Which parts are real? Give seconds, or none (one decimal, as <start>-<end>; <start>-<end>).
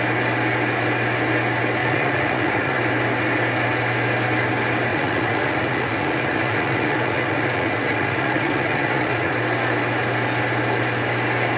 0.0-1.8; 2.8-4.9; 9.3-11.6